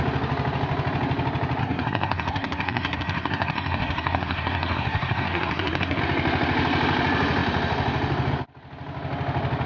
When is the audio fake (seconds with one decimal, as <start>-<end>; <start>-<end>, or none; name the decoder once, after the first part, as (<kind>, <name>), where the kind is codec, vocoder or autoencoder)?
1.6-6.0 (codec, SNAC)